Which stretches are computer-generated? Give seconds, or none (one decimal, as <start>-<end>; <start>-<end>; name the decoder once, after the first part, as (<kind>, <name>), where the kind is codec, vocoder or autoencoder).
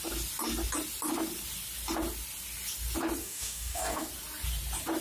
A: 3.2-4.1 (codec, DAC)